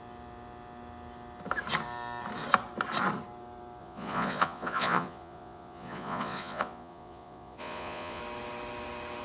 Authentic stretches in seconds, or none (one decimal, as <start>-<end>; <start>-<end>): 0.0-3.8; 8.2-9.2